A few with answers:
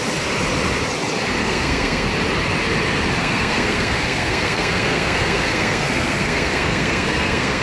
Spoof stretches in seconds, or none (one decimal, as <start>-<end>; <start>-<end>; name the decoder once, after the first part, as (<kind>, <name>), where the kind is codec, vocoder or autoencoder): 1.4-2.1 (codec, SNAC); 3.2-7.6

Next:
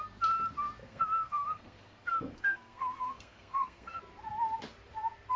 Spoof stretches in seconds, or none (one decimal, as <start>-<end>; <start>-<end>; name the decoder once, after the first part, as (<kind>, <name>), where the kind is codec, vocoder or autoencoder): 0.8-4.0 (codec, SNAC)

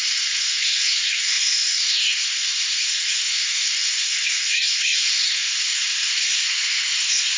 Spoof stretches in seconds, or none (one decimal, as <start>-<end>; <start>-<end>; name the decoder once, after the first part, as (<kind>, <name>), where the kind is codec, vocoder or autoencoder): 0.0-7.4 (codec, SNAC)

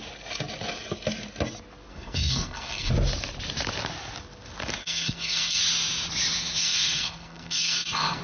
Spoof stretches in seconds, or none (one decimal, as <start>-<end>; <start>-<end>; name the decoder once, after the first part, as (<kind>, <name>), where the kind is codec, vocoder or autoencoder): 1.9-2.9 (codec, SNAC); 4.8-5.6; 6.6-8.2

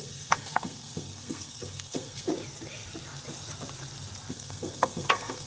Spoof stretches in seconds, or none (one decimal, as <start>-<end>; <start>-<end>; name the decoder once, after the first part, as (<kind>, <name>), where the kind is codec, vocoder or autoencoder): 0.0-2.3 (codec, SNAC); 4.3-5.5

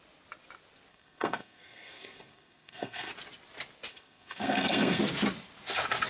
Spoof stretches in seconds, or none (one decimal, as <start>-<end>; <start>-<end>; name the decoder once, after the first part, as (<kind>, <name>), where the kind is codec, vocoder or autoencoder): 0.9-3.1 (codec, SNAC); 3.9-5.0

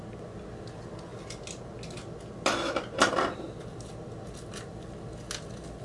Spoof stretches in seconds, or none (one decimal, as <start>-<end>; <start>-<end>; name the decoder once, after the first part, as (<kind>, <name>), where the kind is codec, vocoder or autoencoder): none